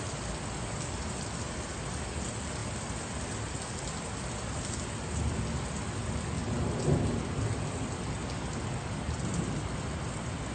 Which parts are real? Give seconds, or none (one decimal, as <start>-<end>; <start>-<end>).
0.0-10.5